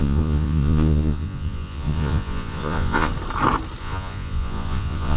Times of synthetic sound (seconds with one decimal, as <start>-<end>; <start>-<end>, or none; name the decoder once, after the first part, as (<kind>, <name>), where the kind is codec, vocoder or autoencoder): 0.0-3.1 (vocoder, Vocos); 3.8-5.2